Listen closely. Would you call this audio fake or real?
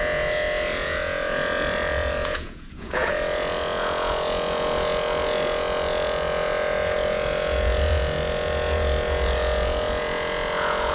fake